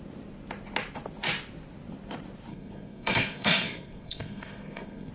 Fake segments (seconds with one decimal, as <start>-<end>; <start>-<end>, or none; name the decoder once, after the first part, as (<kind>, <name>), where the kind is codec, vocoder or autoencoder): 2.5-5.1 (codec, SNAC)